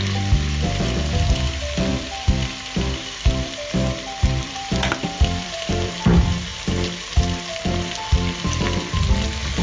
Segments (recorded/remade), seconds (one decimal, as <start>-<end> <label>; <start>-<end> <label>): 0.0-1.9 recorded; 1.9-6.0 remade; 6.0-9.6 recorded